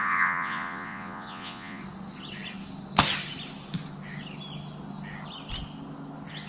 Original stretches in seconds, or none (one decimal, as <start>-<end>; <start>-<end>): 1.8-6.5